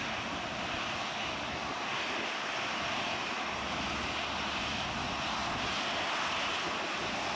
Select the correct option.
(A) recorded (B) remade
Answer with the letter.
A